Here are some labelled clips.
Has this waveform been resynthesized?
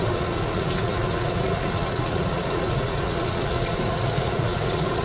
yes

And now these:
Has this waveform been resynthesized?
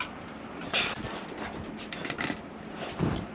no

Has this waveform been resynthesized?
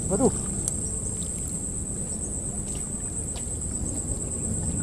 no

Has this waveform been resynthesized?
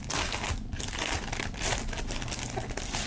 no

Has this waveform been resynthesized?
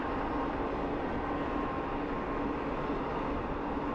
no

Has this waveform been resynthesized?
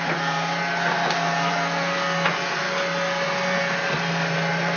no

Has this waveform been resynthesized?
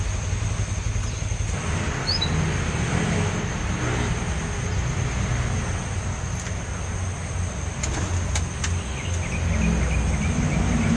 no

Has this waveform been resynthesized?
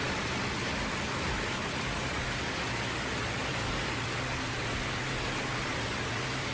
no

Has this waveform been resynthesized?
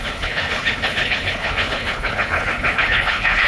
yes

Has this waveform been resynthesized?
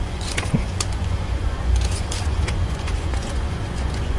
yes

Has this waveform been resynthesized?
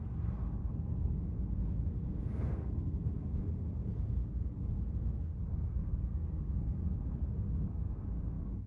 yes